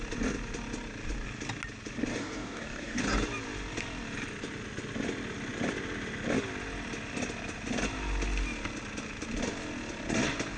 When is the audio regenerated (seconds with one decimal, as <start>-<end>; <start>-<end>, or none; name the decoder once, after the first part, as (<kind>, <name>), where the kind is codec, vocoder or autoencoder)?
2.1-3.0 (codec, DAC)